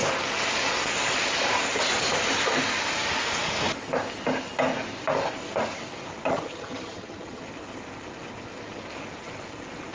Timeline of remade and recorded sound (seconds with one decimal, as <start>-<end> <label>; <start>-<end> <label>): 0.0-6.3 recorded; 6.3-7.4 remade; 7.4-9.9 recorded